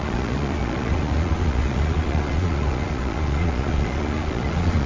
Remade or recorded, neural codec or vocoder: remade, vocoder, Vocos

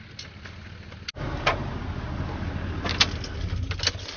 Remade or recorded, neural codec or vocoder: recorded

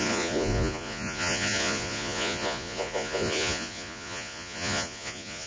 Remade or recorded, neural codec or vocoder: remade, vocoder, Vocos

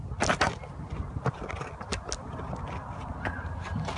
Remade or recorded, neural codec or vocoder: recorded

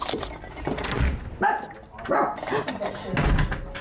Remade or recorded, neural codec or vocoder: recorded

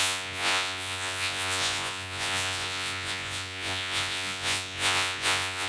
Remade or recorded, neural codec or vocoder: remade, vocoder, Vocos